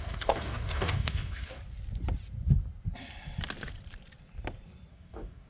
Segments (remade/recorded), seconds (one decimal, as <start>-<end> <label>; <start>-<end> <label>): 0.0-1.6 remade; 1.6-4.9 recorded; 4.9-5.5 remade